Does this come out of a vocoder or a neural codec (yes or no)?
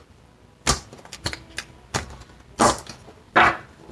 no